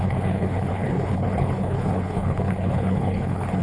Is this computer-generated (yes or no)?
yes